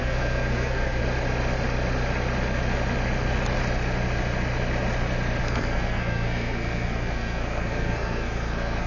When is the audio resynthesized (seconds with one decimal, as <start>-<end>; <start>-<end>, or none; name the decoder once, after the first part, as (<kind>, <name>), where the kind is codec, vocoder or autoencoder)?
0.0-1.0 (codec, SNAC); 5.4-8.9